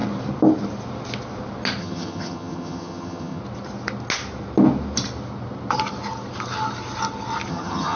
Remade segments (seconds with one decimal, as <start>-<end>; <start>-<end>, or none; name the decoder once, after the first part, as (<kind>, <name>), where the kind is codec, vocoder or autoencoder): 1.8-3.4 (vocoder, HiFi-GAN); 7.5-8.0